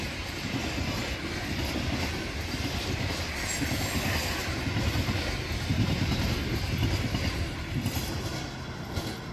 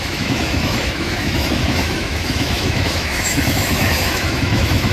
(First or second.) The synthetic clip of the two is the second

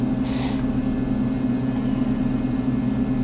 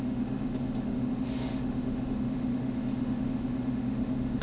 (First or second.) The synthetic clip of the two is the second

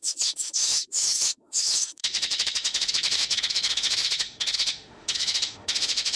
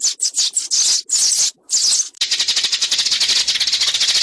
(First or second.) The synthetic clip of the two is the first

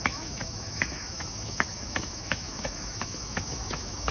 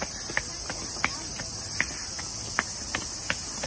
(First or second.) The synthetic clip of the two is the first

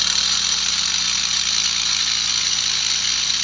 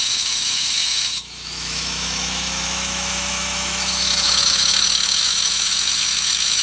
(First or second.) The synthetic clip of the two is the second